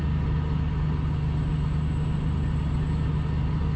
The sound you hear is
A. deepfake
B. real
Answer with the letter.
B